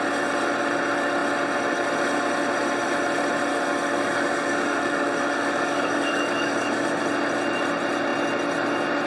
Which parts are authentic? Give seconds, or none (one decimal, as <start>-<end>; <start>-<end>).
0.0-3.5; 7.0-9.1